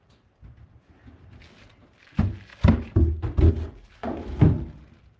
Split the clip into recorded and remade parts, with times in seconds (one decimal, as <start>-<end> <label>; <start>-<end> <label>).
0.0-5.2 recorded